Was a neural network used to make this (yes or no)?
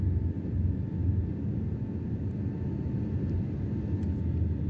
no